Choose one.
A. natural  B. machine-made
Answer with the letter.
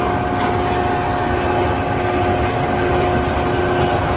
A